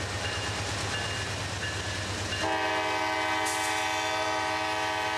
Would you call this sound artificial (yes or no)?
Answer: no